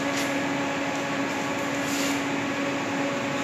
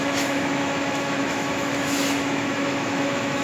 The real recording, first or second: first